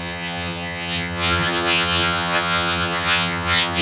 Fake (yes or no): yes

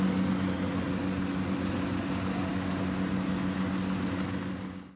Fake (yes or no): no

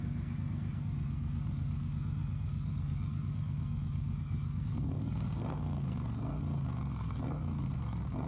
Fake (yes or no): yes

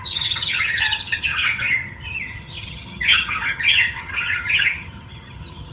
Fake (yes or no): yes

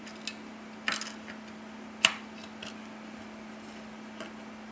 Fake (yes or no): no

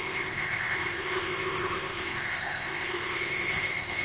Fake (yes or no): yes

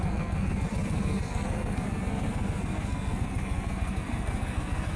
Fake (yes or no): yes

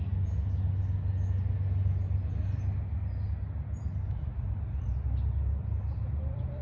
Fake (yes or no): no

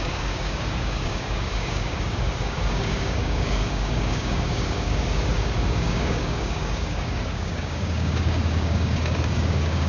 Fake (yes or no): yes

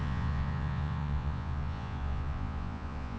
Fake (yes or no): yes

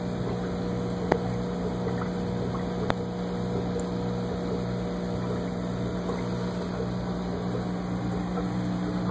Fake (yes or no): no